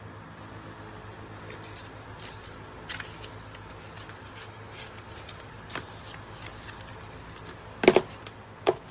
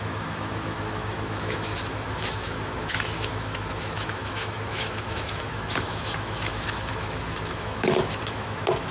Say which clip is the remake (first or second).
second